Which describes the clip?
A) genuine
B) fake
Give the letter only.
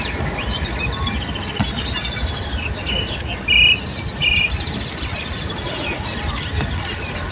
A